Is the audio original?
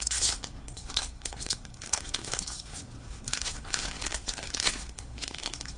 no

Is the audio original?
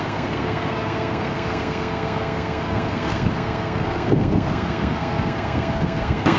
no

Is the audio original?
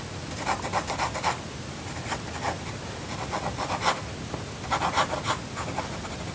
yes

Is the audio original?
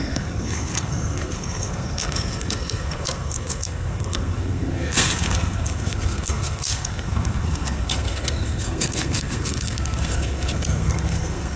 no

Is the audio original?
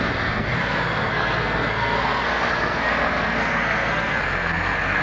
no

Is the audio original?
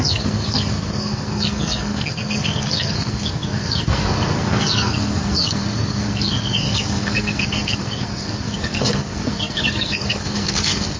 no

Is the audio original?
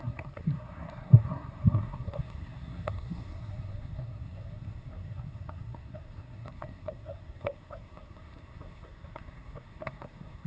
no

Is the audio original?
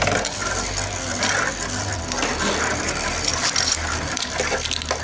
yes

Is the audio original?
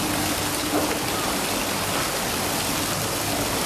yes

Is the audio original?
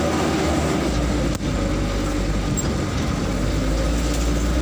yes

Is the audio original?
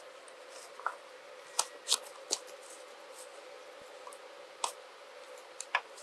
yes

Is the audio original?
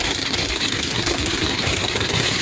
no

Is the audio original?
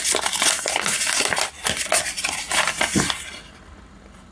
yes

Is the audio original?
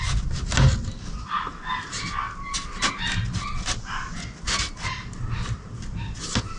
yes